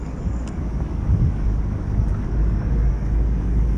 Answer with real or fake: fake